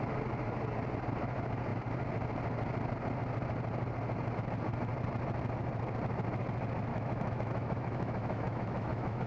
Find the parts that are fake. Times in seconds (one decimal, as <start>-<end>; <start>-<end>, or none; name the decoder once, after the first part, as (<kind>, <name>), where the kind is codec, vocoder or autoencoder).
6.9-9.3 (autoencoder, DAC-VAE)